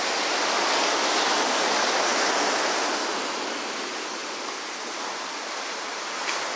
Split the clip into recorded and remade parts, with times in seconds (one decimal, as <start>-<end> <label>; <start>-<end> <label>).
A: 0.0-4.2 recorded; 4.2-5.9 remade; 5.9-6.6 recorded